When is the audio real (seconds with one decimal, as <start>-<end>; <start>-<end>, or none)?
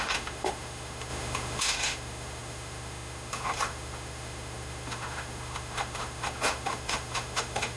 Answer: none